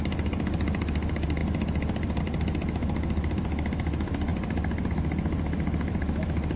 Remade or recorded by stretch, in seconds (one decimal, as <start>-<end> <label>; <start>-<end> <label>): 0.0-4.3 recorded; 4.3-4.9 remade; 4.9-6.6 recorded